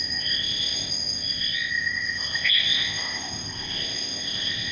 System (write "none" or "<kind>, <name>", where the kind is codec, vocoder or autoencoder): codec, ZipCodec